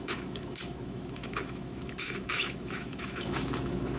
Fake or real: fake